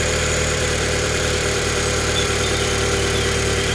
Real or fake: fake